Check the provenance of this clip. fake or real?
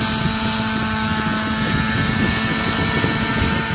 real